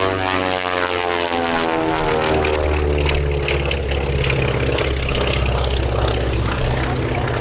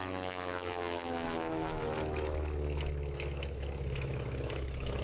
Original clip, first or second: first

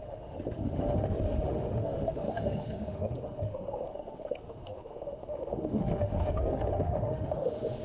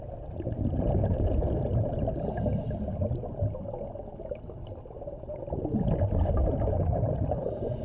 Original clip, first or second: second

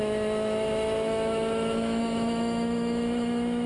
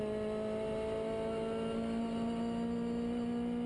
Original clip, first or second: second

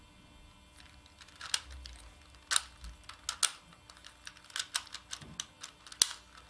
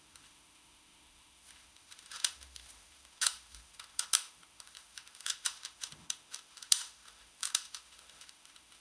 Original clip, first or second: first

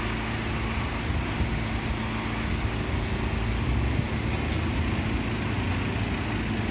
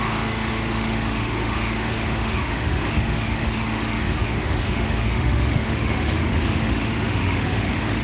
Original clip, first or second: first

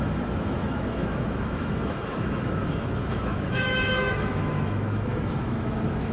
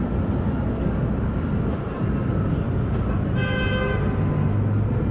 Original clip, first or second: second